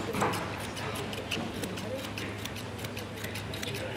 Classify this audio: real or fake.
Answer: real